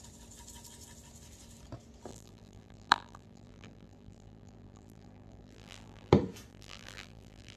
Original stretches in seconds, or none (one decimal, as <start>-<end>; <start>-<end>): 0.0-2.1; 6.1-6.5